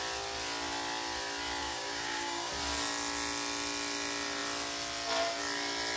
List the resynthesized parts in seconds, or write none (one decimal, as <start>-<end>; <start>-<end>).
1.6-2.5